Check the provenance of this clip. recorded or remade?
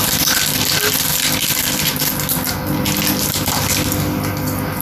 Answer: recorded